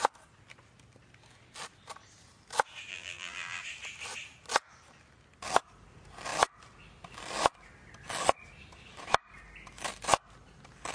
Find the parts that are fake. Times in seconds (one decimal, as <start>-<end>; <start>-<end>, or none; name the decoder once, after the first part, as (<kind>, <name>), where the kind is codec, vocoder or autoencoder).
2.9-3.6 (vocoder, BigVGAN v2)